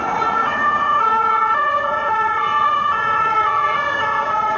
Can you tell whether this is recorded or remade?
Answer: remade